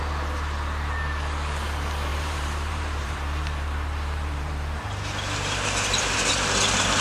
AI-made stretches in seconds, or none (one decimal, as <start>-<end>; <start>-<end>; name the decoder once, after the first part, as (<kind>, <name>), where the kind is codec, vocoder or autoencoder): 2.1-6.3 (vocoder, BigVGAN v2)